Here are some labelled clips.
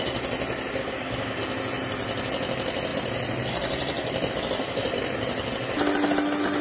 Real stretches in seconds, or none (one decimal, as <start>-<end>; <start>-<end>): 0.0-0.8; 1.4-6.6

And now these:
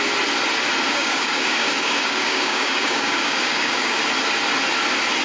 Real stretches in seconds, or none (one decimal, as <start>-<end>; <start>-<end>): 0.0-0.9; 4.0-5.2

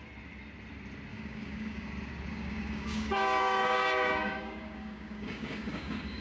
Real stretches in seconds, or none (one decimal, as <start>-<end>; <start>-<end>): 0.0-1.1; 1.9-2.3

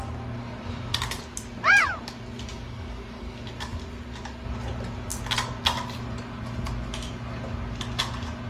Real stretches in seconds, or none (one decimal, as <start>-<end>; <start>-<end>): 0.0-2.5; 3.4-8.5